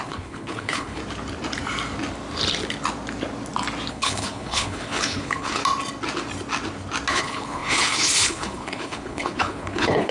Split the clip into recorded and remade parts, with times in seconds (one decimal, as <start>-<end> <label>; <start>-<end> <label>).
0.0-1.0 remade; 1.0-3.9 recorded; 3.9-5.6 remade; 5.6-7.1 recorded; 7.1-10.1 remade